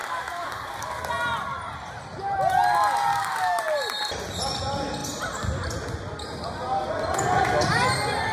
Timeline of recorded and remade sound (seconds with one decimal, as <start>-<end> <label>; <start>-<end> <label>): 0.0-1.0 remade; 1.0-3.1 recorded; 3.1-3.6 remade; 3.6-8.3 recorded